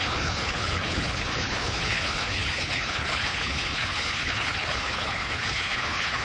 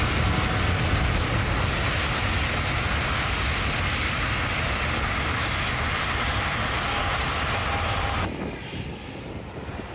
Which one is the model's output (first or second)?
first